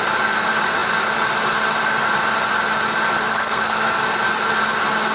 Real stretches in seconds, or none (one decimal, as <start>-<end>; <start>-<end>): 0.0-3.3; 3.8-5.1